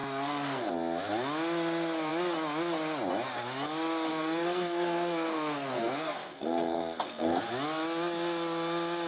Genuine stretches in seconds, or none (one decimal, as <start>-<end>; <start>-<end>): 0.7-4.1; 7.4-9.1